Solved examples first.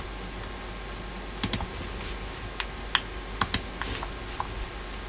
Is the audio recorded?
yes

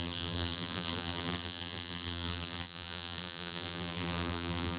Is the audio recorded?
no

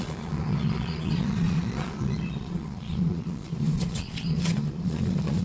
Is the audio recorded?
no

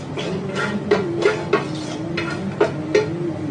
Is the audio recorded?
yes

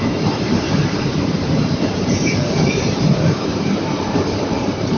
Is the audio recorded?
no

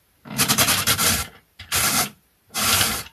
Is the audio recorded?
no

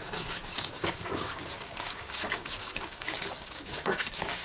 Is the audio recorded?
no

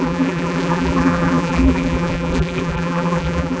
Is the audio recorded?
no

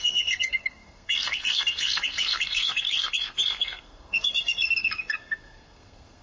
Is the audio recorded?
no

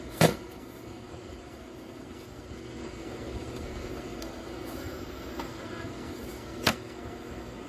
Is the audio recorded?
no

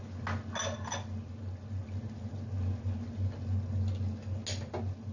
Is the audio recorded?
yes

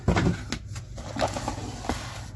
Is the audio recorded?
yes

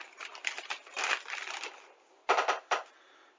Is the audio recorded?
yes